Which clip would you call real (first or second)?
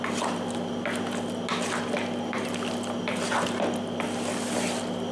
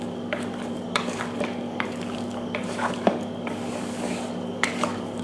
first